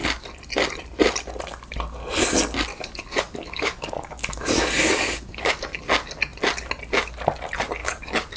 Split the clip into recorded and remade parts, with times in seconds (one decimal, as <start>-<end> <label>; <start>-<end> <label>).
0.0-2.7 recorded; 2.7-5.8 remade; 5.8-7.8 recorded; 7.8-8.4 remade